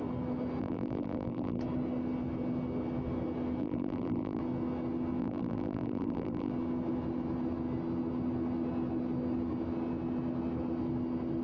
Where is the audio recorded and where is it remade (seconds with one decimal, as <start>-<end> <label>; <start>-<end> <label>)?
0.0-0.6 recorded; 0.6-1.6 remade; 1.6-3.6 recorded; 3.6-4.4 remade; 4.4-5.2 recorded; 5.2-6.5 remade; 6.5-11.4 recorded